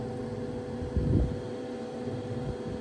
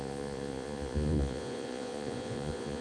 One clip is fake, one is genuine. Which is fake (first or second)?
second